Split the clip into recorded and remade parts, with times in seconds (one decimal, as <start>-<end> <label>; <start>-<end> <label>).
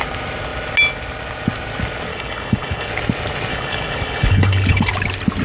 0.0-2.1 recorded; 2.1-2.9 remade; 2.9-3.5 recorded; 3.5-4.9 remade; 4.9-5.4 recorded